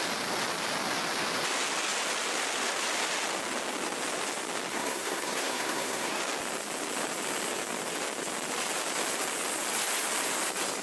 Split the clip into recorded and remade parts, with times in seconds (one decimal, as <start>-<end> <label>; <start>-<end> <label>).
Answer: 0.0-4.7 recorded; 4.7-6.2 remade; 6.2-10.8 recorded